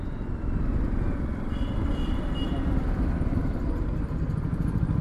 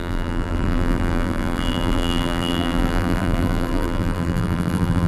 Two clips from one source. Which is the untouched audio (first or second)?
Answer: first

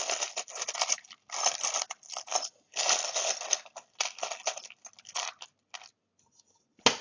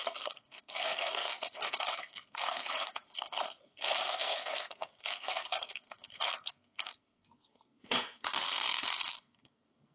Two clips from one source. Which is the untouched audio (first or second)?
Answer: first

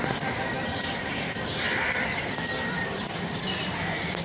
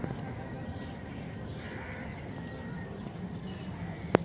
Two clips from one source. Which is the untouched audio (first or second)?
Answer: second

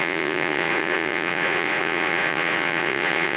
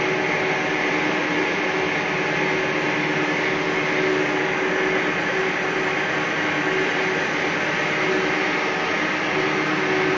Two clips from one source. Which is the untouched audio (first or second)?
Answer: second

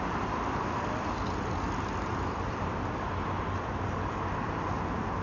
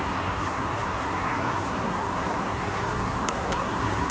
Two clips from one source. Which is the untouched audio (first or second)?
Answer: first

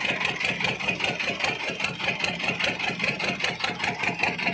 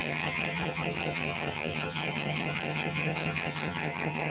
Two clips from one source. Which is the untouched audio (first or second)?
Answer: first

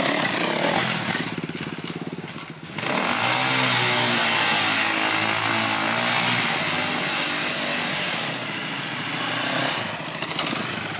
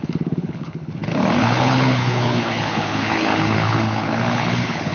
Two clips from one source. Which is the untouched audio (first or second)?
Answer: first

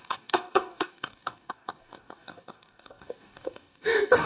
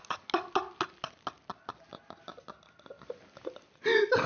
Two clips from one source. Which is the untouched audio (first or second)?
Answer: second